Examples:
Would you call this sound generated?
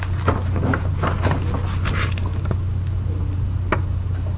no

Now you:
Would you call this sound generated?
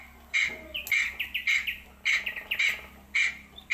no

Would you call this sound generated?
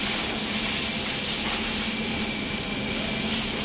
no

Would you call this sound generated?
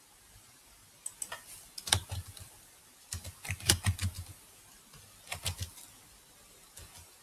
no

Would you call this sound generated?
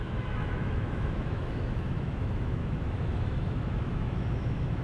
yes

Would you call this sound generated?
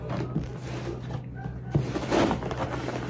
no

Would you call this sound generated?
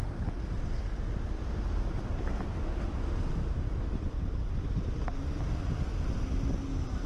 no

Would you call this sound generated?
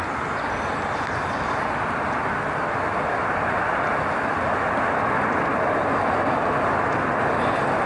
no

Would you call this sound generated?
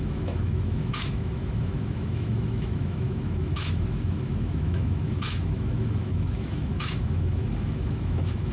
yes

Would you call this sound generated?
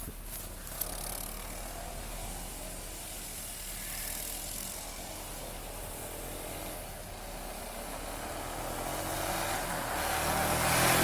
no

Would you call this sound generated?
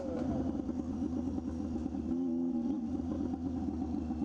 no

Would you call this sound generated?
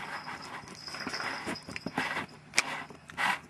no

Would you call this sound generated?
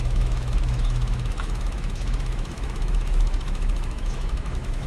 yes